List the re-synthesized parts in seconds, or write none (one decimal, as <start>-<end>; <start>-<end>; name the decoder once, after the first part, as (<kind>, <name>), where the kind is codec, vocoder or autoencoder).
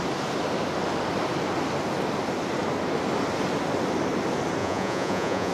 4.6-5.5 (vocoder, Vocos)